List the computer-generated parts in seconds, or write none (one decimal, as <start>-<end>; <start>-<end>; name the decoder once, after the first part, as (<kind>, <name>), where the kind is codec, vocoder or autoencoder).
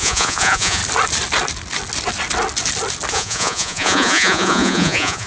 0.0-0.8 (vocoder, Vocos); 3.1-5.3